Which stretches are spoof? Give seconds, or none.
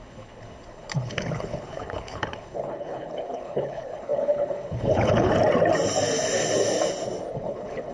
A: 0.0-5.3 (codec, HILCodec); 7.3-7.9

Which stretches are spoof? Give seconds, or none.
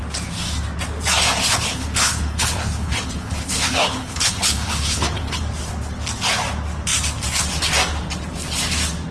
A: 1.4-5.4 (codec, HILCodec)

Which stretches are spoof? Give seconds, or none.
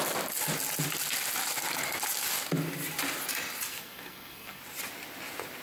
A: 3.7-4.6 (codec, SNAC)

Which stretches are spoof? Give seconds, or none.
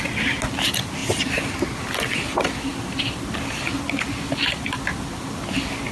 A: none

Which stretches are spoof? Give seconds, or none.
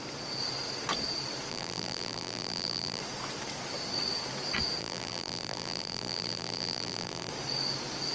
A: 1.5-3.0 (vocoder, BigVGAN v2); 4.8-7.3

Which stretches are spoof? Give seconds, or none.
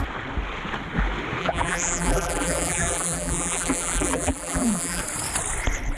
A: 1.4-5.0 (vocoder, BigVGAN v2)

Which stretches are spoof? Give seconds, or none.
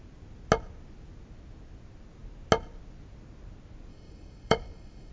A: 3.9-5.1 (codec, DAC)